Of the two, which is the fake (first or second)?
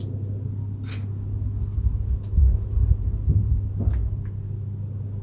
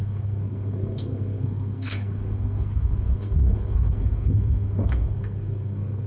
second